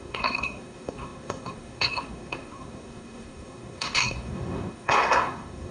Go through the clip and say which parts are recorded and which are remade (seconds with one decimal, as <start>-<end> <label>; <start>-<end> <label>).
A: 0.0-5.7 remade